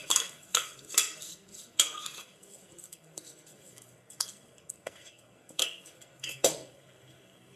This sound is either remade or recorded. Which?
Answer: remade